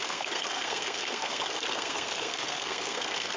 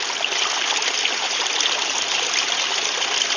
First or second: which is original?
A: second